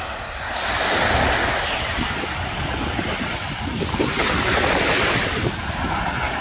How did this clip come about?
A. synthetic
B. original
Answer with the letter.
B